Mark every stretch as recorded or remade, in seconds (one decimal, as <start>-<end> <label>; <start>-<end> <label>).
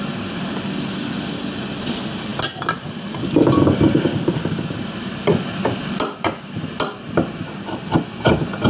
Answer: 0.0-8.7 recorded